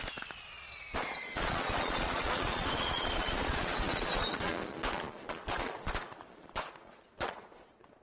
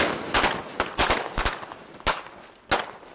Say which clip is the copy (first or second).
first